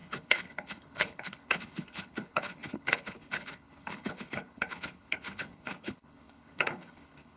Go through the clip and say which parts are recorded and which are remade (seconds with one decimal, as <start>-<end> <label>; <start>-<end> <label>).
0.0-7.4 remade